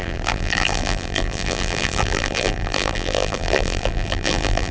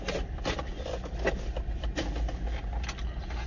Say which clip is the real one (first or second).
second